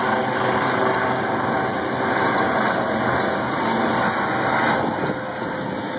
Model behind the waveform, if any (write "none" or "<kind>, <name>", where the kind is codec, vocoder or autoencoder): none